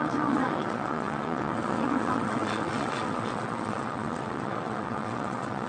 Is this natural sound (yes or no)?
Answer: no